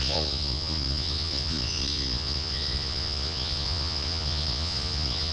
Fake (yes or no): yes